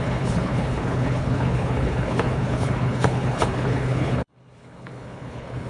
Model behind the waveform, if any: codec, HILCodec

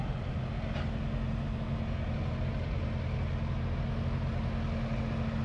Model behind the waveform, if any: none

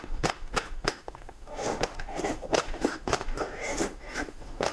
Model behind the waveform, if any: autoencoder, DAC-VAE